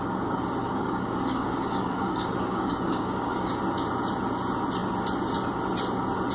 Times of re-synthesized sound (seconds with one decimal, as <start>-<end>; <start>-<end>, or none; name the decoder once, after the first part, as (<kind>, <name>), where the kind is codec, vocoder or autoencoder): 0.6-3.5 (codec, DAC)